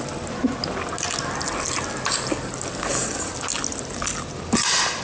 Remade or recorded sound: recorded